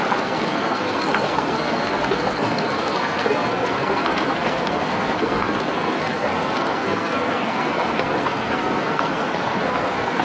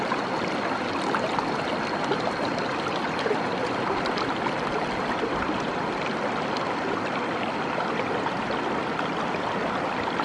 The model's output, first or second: first